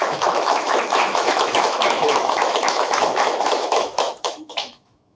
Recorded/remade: remade